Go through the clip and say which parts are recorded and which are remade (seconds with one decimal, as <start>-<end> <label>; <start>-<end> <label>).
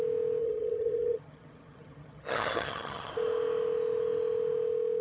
0.0-0.4 recorded; 0.4-3.1 remade; 3.1-5.0 recorded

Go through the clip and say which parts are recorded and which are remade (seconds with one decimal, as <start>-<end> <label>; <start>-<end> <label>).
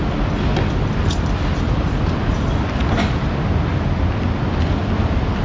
0.0-5.4 recorded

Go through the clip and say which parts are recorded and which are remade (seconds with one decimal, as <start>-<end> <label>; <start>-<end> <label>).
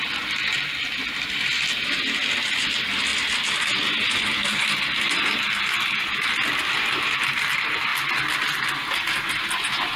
0.0-10.0 recorded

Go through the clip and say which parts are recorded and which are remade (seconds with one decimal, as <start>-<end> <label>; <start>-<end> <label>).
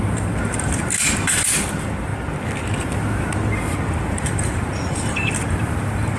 0.0-2.1 remade; 2.1-4.0 recorded; 4.0-6.2 remade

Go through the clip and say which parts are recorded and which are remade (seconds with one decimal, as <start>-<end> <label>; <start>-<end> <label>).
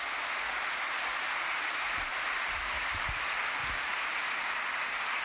0.0-2.1 recorded; 2.1-3.2 remade; 3.2-3.6 recorded; 3.6-4.3 remade; 4.3-5.2 recorded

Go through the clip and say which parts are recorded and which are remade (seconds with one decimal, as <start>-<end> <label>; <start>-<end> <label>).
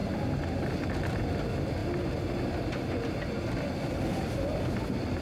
0.0-5.2 recorded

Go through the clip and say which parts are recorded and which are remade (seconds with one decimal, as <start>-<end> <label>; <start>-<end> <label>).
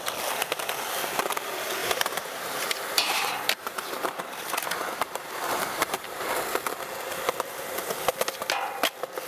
0.0-1.8 recorded; 1.8-6.3 remade; 6.3-9.3 recorded